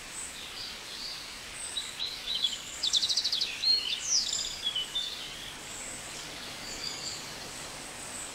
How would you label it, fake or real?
fake